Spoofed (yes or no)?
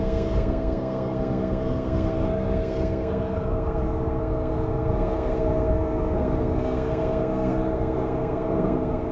yes